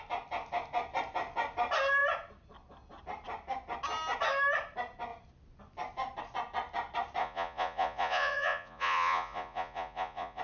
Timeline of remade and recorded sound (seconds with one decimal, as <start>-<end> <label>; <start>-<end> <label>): 0.0-7.2 recorded; 7.2-10.4 remade